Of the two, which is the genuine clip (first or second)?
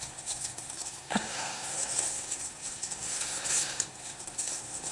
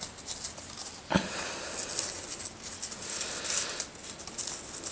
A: second